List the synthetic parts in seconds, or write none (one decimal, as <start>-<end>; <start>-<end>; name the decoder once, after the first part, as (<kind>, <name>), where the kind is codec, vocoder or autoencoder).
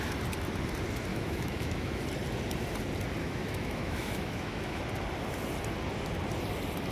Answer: 1.1-2.0 (autoencoder, DAC-VAE); 3.2-4.8